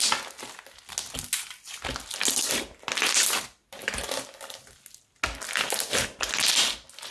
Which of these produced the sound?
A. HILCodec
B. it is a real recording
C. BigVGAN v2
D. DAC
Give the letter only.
B